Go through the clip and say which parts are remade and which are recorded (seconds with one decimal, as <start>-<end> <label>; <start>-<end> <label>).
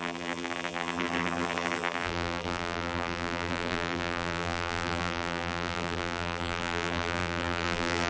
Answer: 0.0-8.1 remade